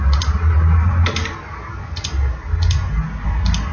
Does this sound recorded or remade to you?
recorded